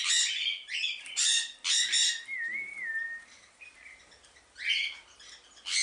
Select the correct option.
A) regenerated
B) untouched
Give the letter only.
B